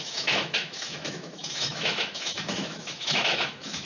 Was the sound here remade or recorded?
remade